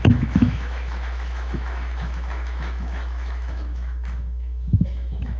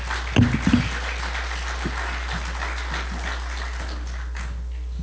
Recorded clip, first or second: second